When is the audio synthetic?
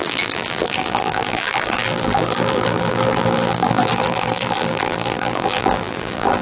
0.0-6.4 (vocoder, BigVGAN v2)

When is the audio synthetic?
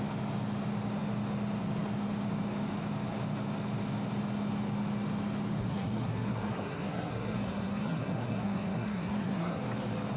5.6-9.6 (codec, SNAC)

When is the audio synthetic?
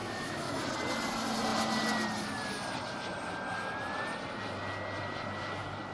0.0-0.6 (autoencoder, DAC-VAE)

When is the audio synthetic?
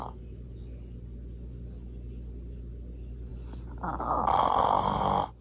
none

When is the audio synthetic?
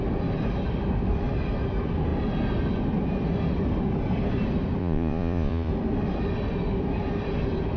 4.8-5.7 (vocoder, Vocos)